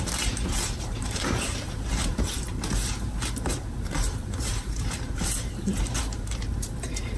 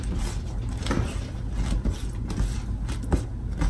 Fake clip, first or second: first